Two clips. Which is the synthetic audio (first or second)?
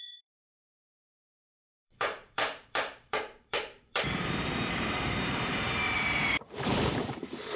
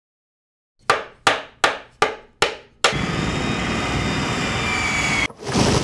first